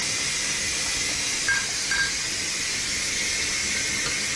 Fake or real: real